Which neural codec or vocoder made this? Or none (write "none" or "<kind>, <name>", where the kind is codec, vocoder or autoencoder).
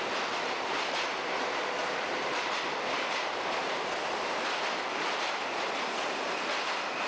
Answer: none